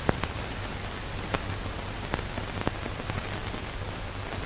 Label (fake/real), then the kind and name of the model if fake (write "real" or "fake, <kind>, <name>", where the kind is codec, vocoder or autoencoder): real